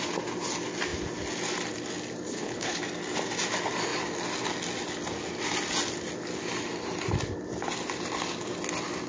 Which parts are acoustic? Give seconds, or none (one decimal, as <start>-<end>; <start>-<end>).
0.0-2.3; 2.8-9.1